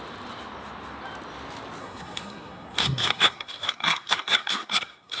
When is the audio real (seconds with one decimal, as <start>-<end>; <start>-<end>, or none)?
0.0-1.8